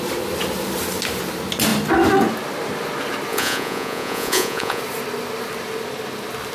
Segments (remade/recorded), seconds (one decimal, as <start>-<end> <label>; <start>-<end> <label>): 0.0-3.3 recorded; 3.3-4.8 remade; 4.8-6.5 recorded